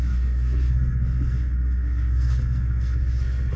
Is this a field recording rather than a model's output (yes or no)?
no